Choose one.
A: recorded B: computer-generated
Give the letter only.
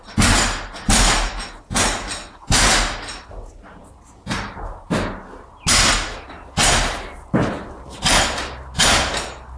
A